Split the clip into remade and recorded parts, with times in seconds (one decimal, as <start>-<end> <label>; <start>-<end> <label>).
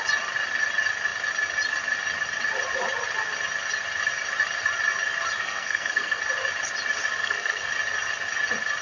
0.0-5.4 recorded; 5.4-6.2 remade; 6.2-7.2 recorded; 7.2-7.7 remade; 7.7-8.8 recorded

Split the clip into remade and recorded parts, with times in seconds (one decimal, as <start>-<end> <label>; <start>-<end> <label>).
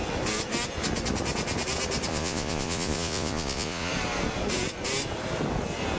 0.0-2.1 recorded; 2.1-3.9 remade; 3.9-6.0 recorded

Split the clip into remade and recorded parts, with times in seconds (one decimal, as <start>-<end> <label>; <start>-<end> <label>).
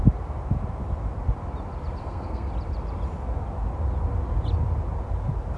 0.0-2.0 recorded; 2.0-2.5 remade; 2.5-5.6 recorded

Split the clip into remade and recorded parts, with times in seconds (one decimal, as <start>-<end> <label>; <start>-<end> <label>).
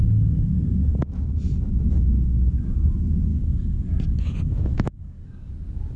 0.0-3.3 recorded; 3.3-5.5 remade; 5.5-6.0 recorded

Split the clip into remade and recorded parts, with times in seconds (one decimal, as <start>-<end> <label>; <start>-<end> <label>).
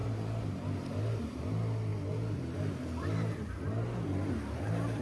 0.0-5.0 recorded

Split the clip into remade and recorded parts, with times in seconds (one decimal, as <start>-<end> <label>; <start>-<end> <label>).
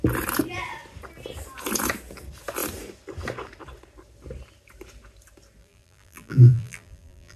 0.0-5.6 recorded; 5.6-7.4 remade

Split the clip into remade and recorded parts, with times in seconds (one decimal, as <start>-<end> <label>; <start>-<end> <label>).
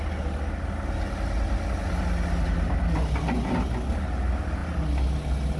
0.0-5.6 recorded